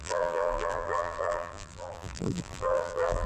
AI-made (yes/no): yes